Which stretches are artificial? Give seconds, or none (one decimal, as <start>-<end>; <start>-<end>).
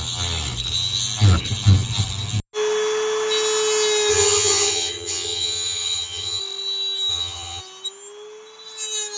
4.1-6.4; 7.1-7.6